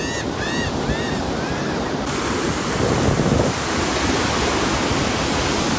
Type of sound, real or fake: real